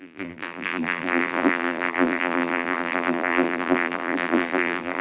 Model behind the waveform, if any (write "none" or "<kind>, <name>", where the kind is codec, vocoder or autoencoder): vocoder, BigVGAN v2